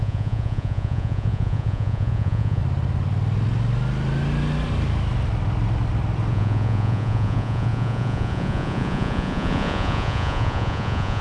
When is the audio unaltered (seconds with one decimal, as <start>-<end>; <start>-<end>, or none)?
2.6-6.3